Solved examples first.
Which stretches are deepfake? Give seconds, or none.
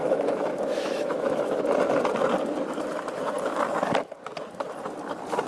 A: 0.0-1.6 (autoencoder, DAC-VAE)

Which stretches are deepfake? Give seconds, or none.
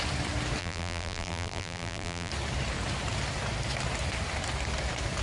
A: 0.6-2.3 (vocoder, BigVGAN v2)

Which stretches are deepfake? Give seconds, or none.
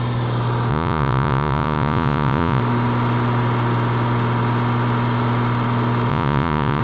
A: 0.7-2.6 (vocoder, Vocos); 6.1-6.8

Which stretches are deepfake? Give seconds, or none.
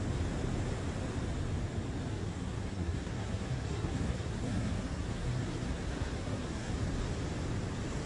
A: 2.1-6.7 (codec, SNAC)